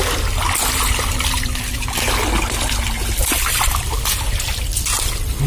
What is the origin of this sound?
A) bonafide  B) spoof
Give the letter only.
A